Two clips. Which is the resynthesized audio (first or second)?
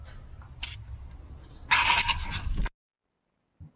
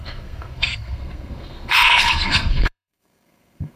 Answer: second